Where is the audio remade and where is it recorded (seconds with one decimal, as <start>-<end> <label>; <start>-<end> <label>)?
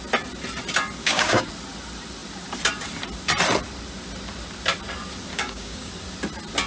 0.0-1.0 recorded; 1.0-1.5 remade; 1.5-5.3 recorded; 5.3-5.9 remade; 5.9-6.7 recorded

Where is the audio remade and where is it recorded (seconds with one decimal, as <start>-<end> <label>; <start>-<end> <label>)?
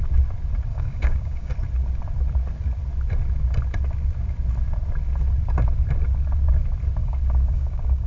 0.0-0.7 recorded; 0.7-1.5 remade; 1.5-7.0 recorded; 7.0-8.1 remade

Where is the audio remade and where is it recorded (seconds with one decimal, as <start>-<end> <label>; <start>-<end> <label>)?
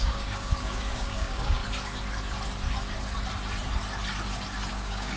0.0-1.6 remade; 1.6-4.7 recorded; 4.7-5.2 remade